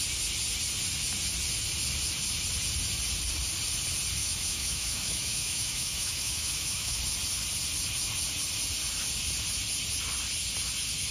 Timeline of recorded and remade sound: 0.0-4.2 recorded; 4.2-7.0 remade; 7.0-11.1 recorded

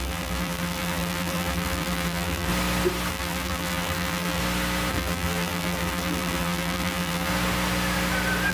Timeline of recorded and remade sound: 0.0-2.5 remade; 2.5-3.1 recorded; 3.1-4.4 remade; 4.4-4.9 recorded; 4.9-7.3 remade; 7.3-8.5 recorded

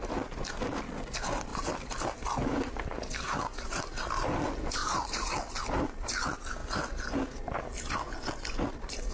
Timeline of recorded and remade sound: 0.0-4.8 recorded; 4.8-5.4 remade; 5.4-9.1 recorded